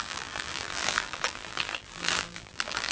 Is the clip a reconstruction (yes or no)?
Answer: yes